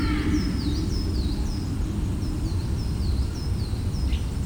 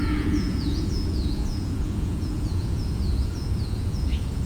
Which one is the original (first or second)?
first